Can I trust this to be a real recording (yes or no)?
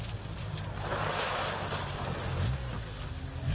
yes